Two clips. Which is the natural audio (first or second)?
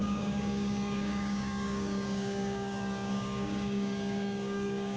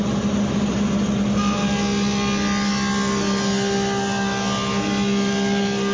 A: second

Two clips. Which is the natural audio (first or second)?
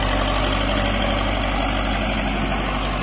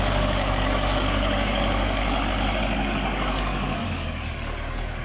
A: first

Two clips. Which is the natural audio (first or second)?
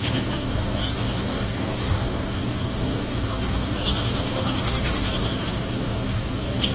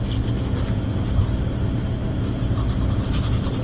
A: second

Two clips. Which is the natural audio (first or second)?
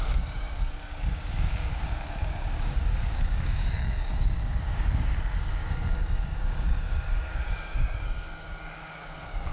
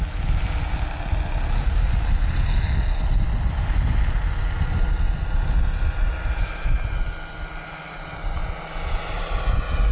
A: second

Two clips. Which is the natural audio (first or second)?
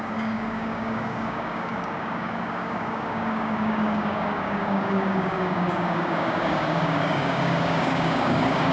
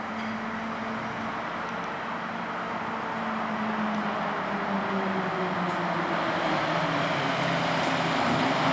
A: second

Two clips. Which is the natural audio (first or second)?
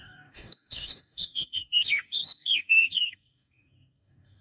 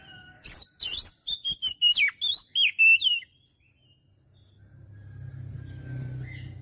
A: second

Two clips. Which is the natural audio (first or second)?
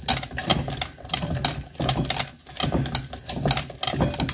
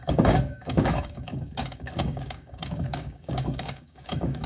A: first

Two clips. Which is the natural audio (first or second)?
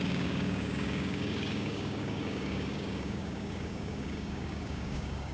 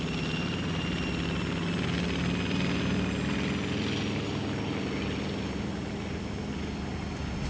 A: second